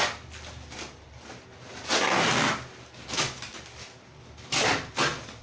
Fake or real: real